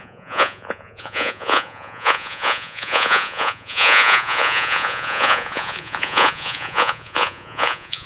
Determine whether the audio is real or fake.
fake